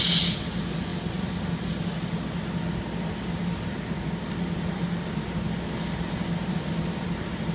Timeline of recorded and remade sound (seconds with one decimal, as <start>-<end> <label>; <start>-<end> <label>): 0.0-7.5 recorded